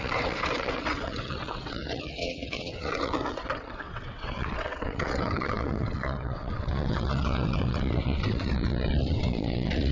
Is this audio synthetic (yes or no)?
yes